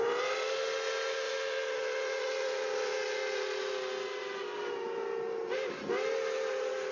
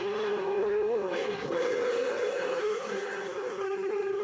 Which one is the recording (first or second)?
first